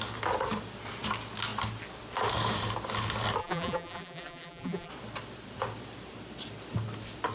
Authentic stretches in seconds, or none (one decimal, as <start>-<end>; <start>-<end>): 0.0-3.4; 4.9-7.3